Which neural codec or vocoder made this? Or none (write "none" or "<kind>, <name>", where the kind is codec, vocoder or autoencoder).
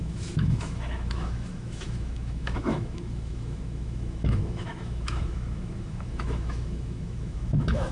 autoencoder, DAC-VAE